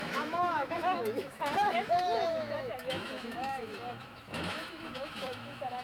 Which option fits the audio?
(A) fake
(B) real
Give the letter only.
A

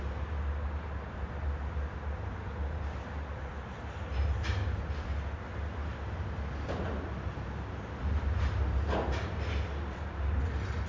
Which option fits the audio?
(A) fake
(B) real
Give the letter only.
B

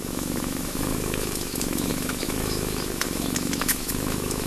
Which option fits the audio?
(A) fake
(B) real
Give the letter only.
A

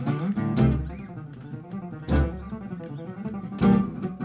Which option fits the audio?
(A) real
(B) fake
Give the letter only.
A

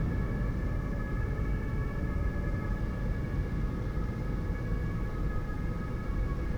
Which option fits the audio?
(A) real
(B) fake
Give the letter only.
A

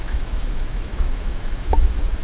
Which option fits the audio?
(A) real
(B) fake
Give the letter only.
B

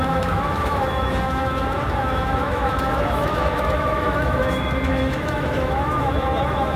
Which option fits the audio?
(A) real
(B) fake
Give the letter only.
B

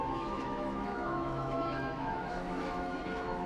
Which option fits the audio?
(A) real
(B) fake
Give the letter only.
B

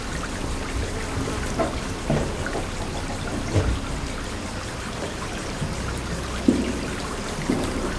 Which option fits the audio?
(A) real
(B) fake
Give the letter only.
A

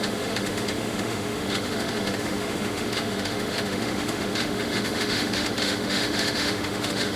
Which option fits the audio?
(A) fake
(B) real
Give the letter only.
A